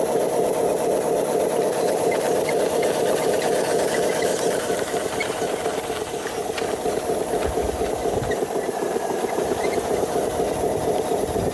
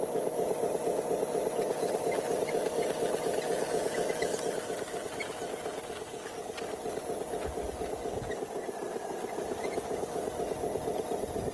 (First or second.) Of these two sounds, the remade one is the first